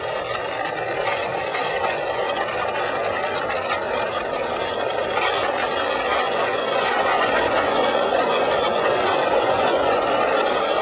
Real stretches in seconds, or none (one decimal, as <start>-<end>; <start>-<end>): 0.0-1.1; 2.5-6.1; 10.1-10.8